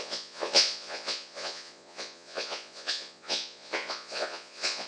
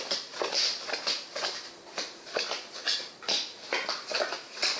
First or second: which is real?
second